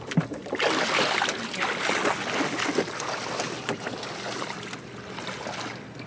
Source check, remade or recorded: recorded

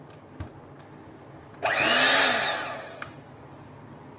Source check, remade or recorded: recorded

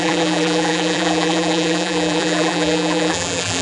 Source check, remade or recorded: remade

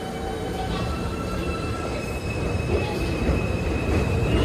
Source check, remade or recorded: remade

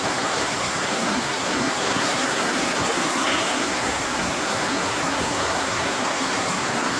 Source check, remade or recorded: remade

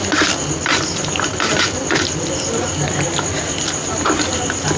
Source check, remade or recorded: recorded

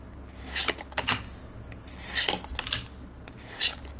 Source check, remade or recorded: recorded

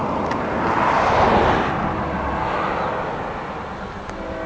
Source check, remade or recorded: recorded